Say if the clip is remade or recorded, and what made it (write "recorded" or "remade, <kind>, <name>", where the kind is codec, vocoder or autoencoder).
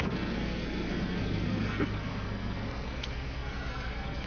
remade, codec, SNAC